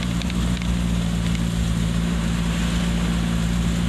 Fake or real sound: real